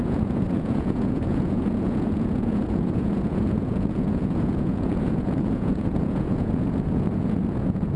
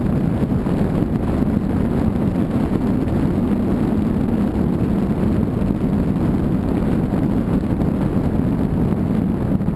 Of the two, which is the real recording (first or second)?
second